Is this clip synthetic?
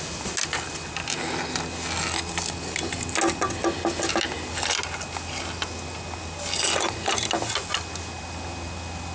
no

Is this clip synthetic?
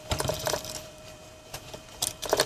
yes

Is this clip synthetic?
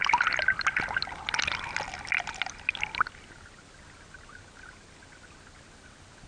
no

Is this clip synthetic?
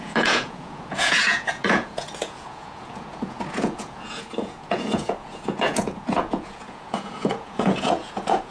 yes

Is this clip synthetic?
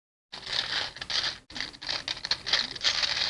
no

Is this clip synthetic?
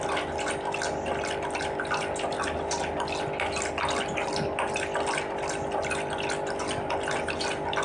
no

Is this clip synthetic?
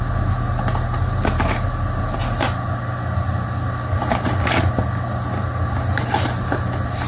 no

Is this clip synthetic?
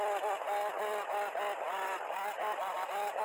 no